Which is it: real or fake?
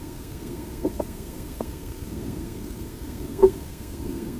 fake